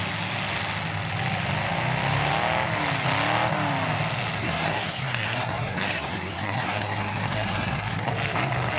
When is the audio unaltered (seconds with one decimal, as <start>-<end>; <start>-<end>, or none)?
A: 0.0-4.4; 8.1-8.8